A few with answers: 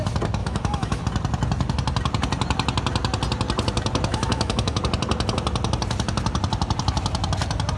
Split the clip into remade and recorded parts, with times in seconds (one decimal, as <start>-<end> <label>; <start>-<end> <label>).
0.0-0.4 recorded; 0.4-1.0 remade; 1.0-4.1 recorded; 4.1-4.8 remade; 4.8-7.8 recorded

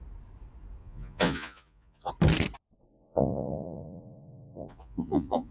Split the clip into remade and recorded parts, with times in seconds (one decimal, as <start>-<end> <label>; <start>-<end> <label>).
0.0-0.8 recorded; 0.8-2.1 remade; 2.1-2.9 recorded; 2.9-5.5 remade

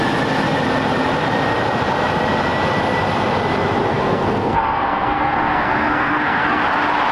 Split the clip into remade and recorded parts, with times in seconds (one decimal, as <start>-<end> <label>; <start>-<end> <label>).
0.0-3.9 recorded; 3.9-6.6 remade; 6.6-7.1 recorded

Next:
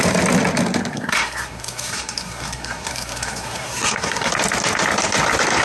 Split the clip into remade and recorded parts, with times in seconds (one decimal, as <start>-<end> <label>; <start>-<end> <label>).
0.0-0.9 recorded; 0.9-4.3 remade; 4.3-5.6 recorded

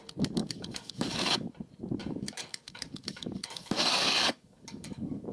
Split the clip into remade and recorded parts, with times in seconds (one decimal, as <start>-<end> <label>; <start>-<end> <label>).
0.0-0.4 recorded; 0.4-1.5 remade; 1.5-2.0 recorded; 2.0-5.3 remade

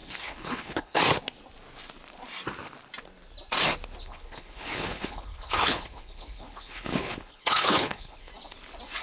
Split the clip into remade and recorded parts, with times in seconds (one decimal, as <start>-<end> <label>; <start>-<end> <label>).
0.0-1.0 remade; 1.0-4.0 recorded; 4.0-8.3 remade; 8.3-9.0 recorded

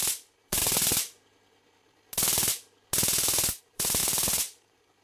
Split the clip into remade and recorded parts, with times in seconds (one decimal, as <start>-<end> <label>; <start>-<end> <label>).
0.0-0.6 remade; 0.6-3.6 recorded; 3.6-5.0 remade

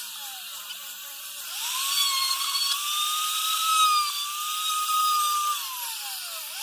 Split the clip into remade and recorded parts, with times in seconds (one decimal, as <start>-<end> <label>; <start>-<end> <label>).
0.0-3.7 remade; 3.7-6.6 recorded